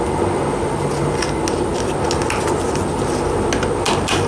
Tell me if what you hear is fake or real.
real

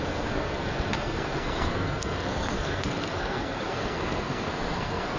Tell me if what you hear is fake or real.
fake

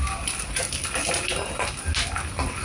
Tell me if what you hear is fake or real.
real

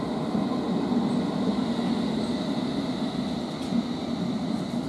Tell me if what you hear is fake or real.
real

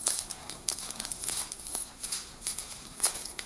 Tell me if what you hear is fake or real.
fake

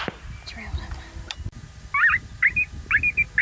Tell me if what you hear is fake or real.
real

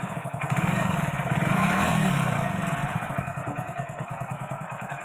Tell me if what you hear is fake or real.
fake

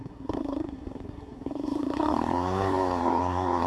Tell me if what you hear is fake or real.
fake